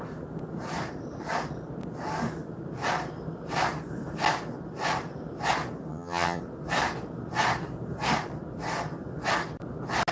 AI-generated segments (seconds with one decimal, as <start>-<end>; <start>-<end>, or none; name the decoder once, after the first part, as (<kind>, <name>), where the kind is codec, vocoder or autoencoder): 5.9-6.4 (vocoder, HiFi-GAN)